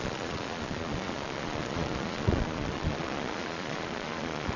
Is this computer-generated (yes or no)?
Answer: yes